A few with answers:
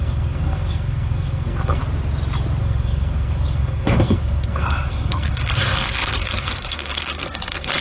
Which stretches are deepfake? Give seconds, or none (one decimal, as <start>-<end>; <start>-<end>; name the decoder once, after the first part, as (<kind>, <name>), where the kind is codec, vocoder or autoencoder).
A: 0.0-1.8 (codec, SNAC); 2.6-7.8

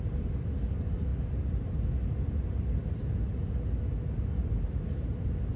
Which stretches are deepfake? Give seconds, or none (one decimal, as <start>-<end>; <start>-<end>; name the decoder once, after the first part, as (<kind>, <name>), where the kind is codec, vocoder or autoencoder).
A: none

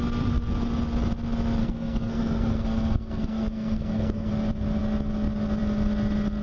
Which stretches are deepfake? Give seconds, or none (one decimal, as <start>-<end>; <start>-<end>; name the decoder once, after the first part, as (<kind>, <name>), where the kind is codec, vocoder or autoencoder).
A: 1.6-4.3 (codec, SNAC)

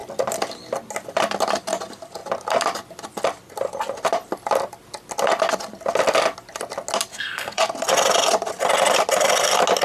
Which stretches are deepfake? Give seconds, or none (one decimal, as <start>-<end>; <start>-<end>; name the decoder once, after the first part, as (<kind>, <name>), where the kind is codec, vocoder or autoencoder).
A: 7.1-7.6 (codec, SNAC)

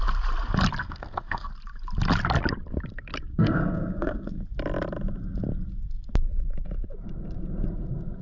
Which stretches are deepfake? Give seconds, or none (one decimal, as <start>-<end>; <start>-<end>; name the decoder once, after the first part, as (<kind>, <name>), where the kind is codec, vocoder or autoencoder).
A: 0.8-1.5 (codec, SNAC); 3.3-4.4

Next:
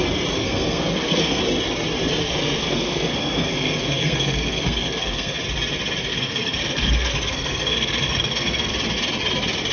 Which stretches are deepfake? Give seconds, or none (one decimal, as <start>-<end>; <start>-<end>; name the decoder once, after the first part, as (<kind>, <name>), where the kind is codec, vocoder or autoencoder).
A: 0.4-1.4 (codec, SNAC); 2.2-5.4; 6.1-8.7